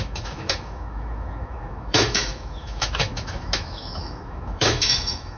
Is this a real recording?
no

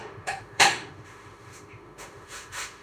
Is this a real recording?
no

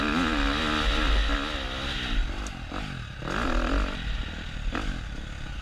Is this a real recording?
yes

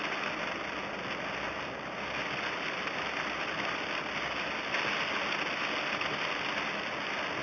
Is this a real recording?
yes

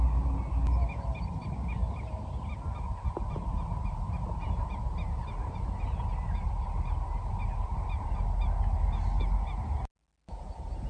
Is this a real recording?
yes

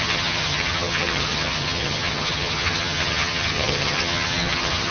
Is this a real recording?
no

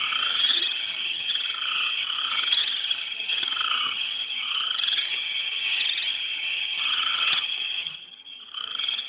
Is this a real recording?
no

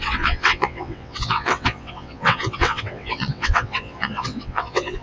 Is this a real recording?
no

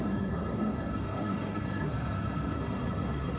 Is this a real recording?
no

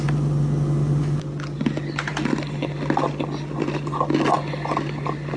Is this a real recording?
yes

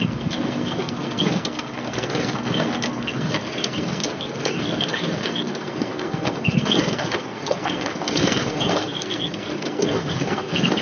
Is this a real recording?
no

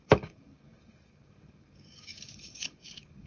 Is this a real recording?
no